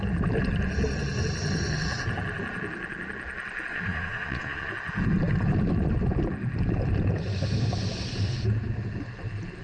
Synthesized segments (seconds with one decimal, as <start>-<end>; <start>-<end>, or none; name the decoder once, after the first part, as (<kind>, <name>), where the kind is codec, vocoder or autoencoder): 3.7-4.7 (vocoder, Vocos)